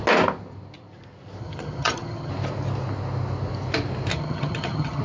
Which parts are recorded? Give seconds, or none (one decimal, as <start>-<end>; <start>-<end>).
0.0-1.4; 2.3-4.1